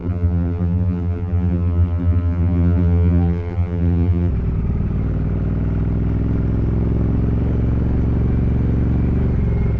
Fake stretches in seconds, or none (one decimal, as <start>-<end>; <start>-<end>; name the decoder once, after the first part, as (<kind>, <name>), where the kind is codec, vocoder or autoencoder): 0.0-4.3 (vocoder, BigVGAN v2)